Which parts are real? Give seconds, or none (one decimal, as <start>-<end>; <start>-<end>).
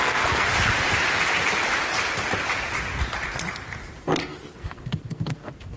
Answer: 0.5-4.0